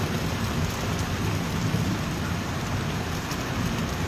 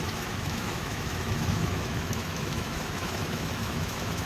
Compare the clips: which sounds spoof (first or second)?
second